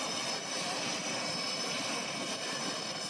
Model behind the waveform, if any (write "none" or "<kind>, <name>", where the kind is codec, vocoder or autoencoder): none